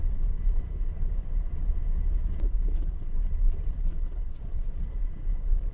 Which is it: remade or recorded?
remade